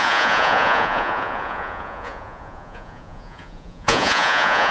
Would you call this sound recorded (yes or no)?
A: no